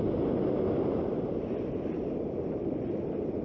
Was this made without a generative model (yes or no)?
yes